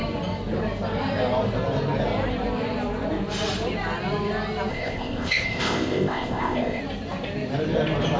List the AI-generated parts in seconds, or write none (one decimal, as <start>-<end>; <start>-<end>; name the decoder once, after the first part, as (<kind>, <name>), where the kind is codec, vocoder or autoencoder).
4.7-6.8 (codec, ZipCodec)